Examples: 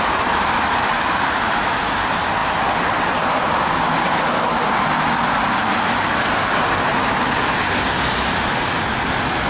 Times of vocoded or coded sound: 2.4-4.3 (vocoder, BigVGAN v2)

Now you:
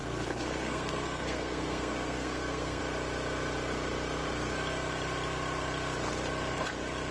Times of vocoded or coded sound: 0.0-2.8 (codec, SNAC)